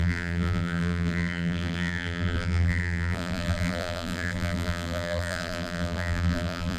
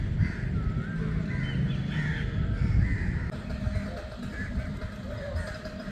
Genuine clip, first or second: second